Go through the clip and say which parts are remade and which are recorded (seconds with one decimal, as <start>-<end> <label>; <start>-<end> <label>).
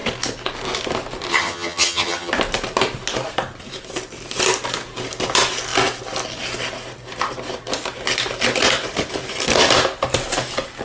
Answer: 0.0-1.3 recorded; 1.3-2.3 remade; 2.3-10.8 recorded